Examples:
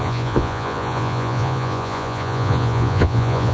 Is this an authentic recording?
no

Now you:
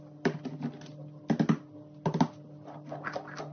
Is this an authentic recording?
yes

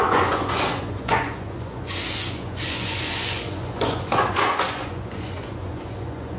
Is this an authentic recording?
no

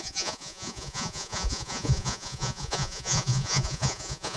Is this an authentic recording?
no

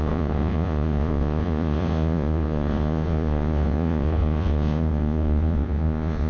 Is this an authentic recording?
no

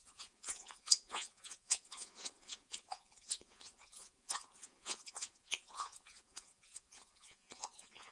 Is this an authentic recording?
no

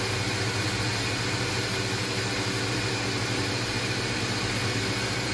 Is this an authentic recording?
yes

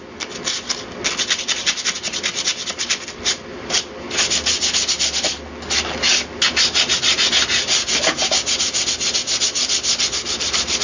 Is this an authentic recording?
yes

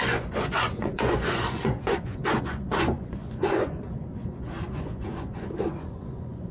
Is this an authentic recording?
no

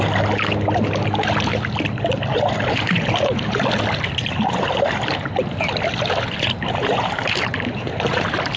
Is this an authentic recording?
yes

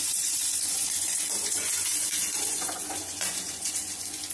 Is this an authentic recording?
no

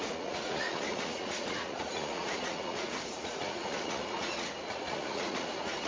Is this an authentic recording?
no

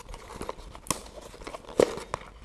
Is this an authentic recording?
yes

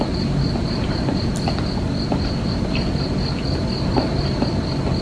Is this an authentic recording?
yes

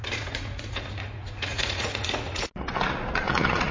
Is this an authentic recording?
no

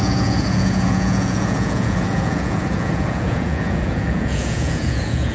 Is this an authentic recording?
no